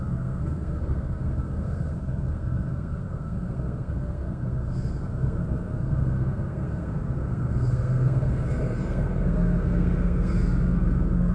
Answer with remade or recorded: remade